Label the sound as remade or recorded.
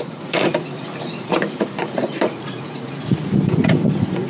remade